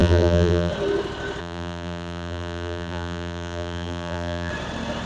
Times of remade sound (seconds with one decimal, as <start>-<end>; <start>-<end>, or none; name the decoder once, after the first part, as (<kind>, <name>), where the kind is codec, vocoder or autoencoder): 0.0-0.7 (vocoder, BigVGAN v2); 1.4-4.5